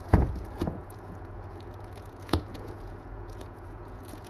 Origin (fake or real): fake